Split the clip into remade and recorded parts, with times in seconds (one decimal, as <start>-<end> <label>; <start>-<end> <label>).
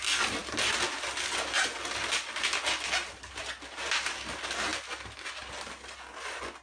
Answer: 0.0-6.6 recorded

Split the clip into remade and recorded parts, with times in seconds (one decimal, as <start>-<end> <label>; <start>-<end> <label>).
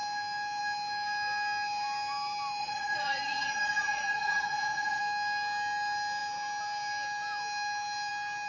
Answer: 0.0-2.6 recorded; 2.6-5.0 remade; 5.0-8.5 recorded